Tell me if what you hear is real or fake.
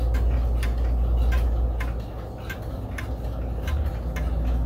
real